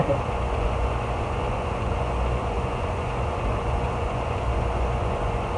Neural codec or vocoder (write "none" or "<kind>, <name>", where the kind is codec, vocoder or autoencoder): vocoder, Vocos